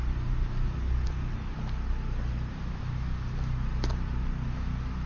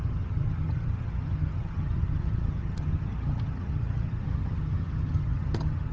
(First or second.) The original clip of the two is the first